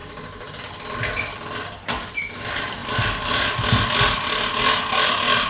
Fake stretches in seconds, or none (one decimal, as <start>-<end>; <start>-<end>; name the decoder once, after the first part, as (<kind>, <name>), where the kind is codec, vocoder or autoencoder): none